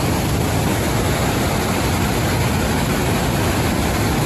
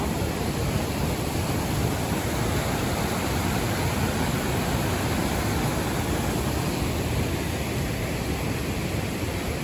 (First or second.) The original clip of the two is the first